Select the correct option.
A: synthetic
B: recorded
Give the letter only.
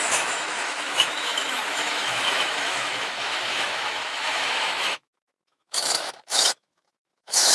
A